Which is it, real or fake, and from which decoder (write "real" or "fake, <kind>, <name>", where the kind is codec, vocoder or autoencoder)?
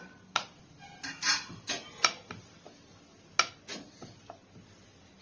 real